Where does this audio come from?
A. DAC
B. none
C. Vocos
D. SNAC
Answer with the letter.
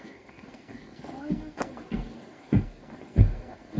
D